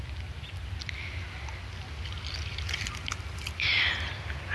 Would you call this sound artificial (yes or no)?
no